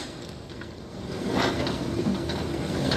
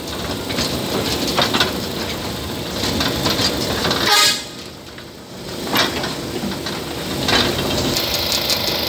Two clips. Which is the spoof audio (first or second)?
first